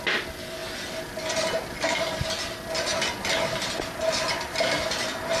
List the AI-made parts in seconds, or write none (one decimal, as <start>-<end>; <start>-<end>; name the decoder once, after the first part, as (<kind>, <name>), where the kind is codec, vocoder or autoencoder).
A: 0.6-1.3 (vocoder, BigVGAN v2)